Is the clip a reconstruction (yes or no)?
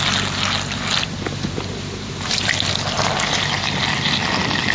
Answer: no